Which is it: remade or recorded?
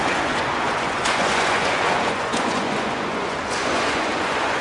remade